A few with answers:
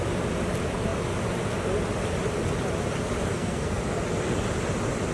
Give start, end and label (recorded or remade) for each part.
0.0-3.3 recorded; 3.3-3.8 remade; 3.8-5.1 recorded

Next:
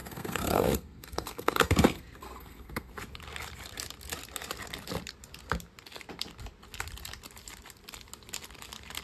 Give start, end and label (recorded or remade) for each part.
0.0-2.9 remade; 2.9-9.0 recorded

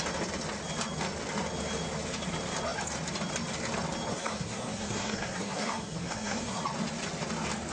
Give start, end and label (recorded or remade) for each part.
0.0-4.1 recorded; 4.1-6.6 remade; 6.6-7.7 recorded

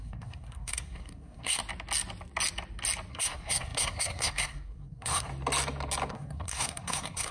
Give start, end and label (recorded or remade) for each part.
0.0-1.6 remade; 1.6-3.1 recorded; 3.1-5.3 remade; 5.3-6.1 recorded; 6.1-7.3 remade

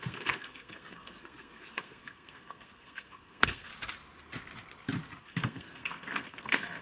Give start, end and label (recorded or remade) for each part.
0.0-3.7 remade; 3.7-5.2 recorded; 5.2-6.8 remade

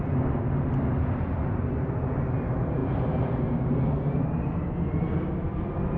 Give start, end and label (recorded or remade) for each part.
0.0-6.0 recorded

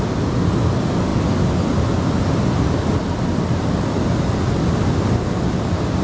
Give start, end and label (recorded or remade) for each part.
0.0-6.0 recorded

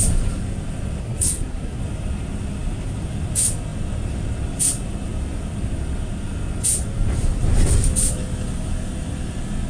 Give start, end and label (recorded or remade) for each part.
0.0-1.0 recorded; 1.0-1.8 remade; 1.8-9.7 recorded